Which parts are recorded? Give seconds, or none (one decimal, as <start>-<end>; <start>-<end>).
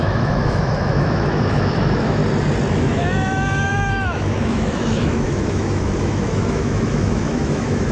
2.2-2.7